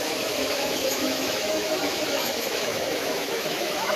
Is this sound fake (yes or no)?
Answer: yes